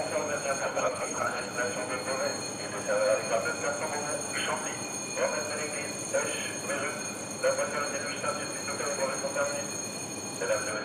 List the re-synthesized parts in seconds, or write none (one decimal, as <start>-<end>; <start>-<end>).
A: 0.6-1.5